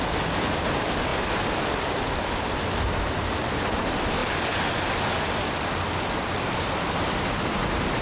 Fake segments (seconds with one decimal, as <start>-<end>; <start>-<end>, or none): none